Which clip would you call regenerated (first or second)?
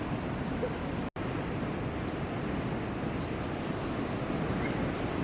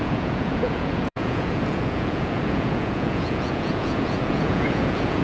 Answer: second